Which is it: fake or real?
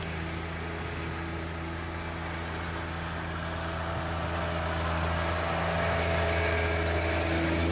real